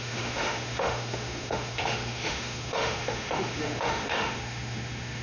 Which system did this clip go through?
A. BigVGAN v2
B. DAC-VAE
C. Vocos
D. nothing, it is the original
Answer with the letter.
B